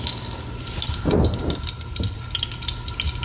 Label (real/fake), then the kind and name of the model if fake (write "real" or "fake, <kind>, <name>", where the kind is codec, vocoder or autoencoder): real